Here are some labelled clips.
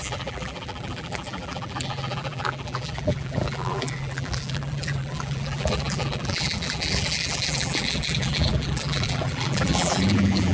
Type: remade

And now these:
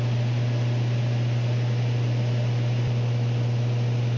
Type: recorded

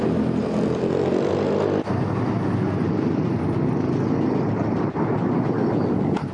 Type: recorded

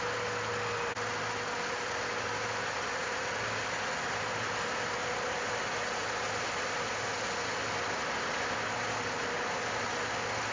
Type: recorded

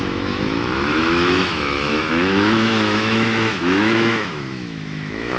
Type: remade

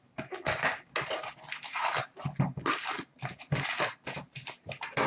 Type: recorded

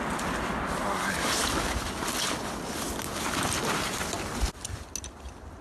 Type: recorded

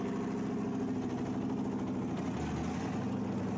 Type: recorded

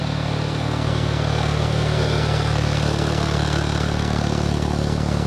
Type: remade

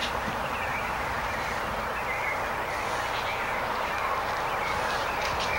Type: recorded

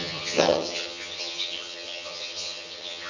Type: remade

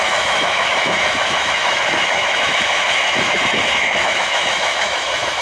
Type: remade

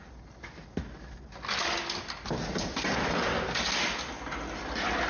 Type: recorded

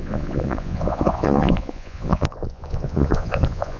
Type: remade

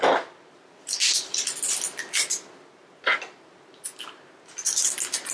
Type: recorded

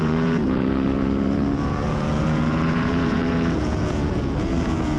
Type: remade